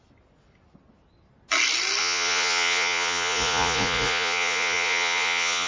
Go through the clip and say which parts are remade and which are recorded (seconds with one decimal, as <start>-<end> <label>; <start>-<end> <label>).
0.0-2.0 recorded; 2.0-5.7 remade